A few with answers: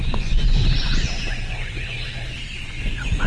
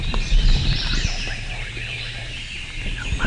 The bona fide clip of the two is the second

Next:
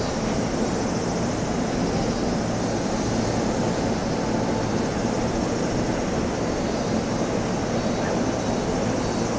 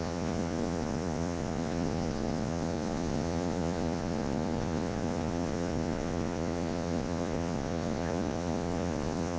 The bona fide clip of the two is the first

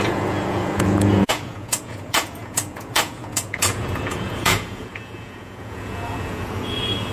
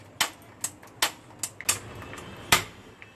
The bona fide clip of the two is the second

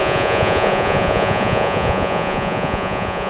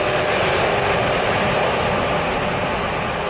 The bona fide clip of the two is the second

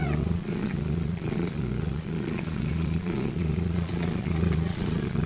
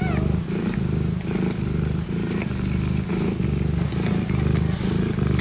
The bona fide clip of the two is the second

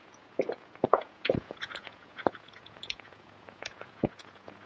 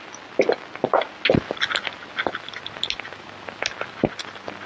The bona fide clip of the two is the second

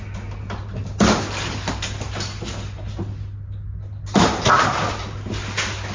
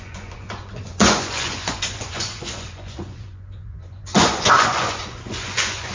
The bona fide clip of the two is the first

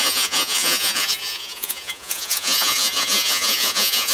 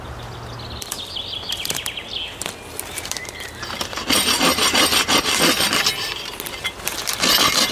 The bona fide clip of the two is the second